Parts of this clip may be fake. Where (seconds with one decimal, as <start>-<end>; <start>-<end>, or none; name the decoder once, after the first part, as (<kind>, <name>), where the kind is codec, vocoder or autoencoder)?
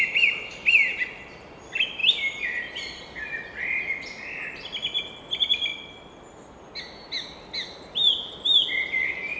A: none